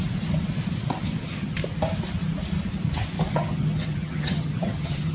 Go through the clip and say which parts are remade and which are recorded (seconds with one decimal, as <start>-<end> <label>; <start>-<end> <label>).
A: 0.0-1.2 recorded; 1.2-1.6 remade; 1.6-3.3 recorded; 3.3-5.1 remade